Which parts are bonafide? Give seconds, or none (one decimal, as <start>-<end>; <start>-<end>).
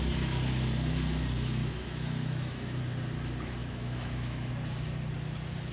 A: 0.0-1.6; 2.8-3.6; 4.5-5.7